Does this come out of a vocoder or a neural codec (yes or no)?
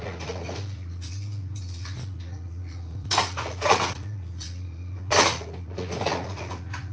yes